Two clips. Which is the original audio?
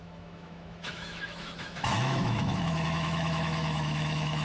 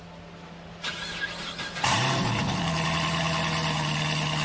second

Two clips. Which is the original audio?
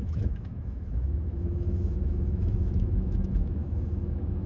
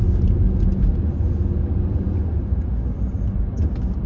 second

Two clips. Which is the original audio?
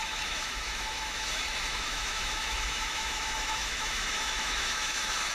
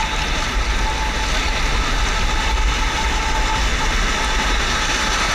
second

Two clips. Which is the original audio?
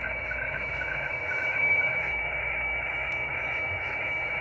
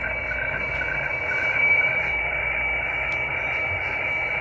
second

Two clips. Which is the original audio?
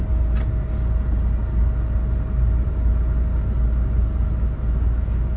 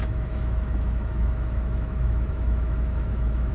first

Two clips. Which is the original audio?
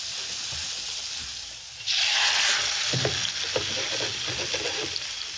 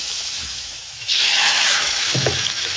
first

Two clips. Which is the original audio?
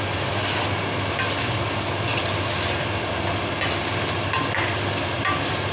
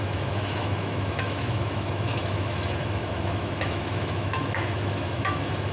first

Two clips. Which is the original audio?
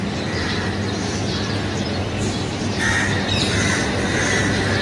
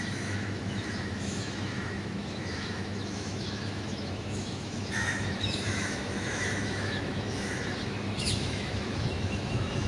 first